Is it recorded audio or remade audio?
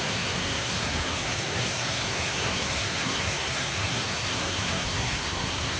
remade